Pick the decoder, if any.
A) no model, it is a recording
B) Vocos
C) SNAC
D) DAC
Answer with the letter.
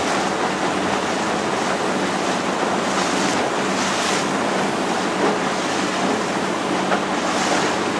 A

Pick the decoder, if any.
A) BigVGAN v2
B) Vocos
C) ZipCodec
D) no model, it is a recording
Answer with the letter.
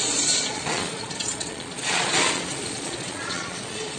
B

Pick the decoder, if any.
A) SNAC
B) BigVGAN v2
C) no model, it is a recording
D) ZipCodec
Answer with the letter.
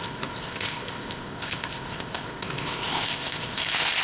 D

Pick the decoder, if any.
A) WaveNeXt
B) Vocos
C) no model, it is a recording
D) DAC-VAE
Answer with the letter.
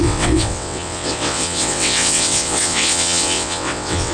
A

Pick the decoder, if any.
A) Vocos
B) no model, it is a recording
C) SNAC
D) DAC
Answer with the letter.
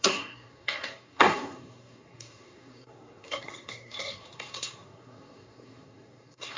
C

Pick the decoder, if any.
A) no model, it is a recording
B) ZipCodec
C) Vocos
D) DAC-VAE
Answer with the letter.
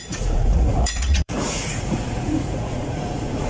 C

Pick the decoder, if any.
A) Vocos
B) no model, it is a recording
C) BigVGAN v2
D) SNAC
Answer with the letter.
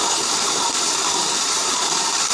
C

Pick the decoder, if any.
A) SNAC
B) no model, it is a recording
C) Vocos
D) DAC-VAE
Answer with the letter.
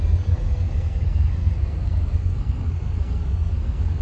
A